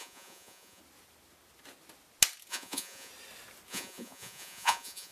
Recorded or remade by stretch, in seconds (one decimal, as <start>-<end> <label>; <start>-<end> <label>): 0.0-0.8 remade; 0.8-2.5 recorded; 2.5-3.1 remade; 3.1-3.7 recorded; 3.7-5.1 remade